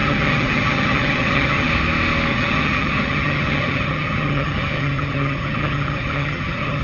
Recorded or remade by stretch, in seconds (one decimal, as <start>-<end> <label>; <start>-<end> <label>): 0.0-1.7 remade; 1.7-2.3 recorded; 2.3-6.8 remade